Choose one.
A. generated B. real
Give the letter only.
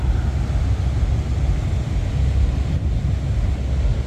B